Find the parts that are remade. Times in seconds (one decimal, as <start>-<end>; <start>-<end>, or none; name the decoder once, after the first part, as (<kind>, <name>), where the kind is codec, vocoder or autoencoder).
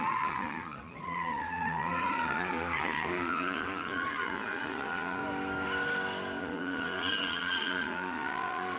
0.0-5.2 (vocoder, Vocos); 6.4-8.8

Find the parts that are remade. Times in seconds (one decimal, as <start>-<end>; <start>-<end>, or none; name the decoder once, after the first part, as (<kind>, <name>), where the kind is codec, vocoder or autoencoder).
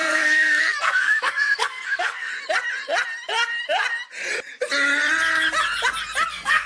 0.0-2.3 (codec, SNAC); 6.3-6.7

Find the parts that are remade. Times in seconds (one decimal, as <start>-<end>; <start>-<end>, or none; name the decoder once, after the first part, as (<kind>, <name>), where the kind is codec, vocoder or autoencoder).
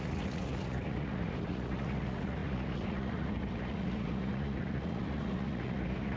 0.0-6.2 (vocoder, Vocos)